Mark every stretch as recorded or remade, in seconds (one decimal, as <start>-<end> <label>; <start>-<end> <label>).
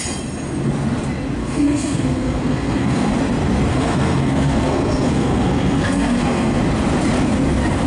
0.0-1.4 recorded; 1.4-3.1 remade; 3.1-3.7 recorded; 3.7-6.6 remade; 6.6-7.9 recorded